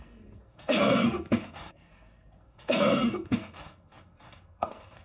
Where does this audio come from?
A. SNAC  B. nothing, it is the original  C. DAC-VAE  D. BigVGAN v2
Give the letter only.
A